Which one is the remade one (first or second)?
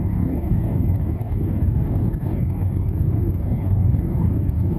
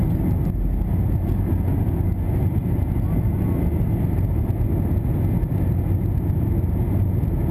first